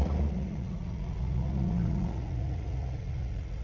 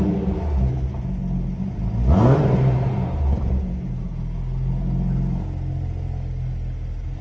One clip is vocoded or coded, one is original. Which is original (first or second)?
second